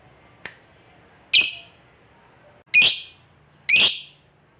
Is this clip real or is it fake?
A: real